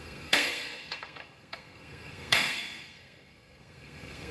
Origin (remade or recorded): remade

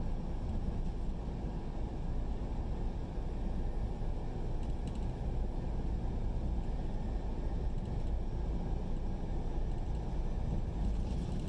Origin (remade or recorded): recorded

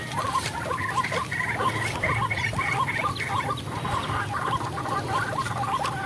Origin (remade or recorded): recorded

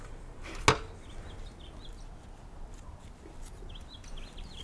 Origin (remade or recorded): recorded